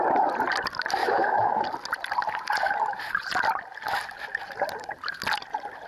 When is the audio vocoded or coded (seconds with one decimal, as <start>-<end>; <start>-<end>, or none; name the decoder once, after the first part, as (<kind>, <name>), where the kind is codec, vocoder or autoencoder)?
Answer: 1.0-1.6 (autoencoder, DAC-VAE)